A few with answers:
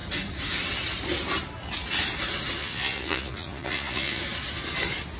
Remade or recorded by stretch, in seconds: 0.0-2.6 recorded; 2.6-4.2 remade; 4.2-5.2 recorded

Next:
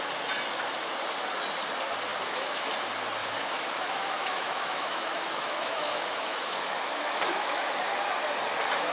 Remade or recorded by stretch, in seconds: 0.0-2.1 recorded; 2.1-2.7 remade; 2.7-3.2 recorded; 3.2-7.7 remade; 7.7-8.9 recorded

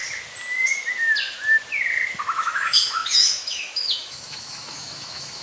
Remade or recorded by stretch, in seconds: 0.0-2.2 recorded; 2.2-5.4 remade

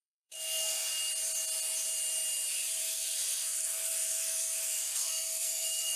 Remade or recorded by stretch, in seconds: 0.0-0.9 remade; 0.9-2.8 recorded; 2.8-6.0 remade

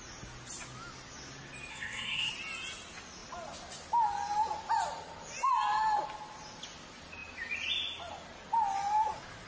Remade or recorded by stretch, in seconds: 0.0-1.7 recorded; 1.7-2.3 remade; 2.3-9.5 recorded

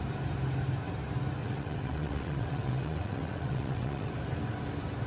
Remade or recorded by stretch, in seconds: 0.0-1.4 recorded; 1.4-4.1 remade; 4.1-5.1 recorded